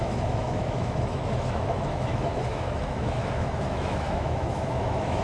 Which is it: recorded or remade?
remade